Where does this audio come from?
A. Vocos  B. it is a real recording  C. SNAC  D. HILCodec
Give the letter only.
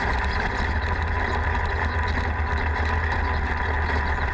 B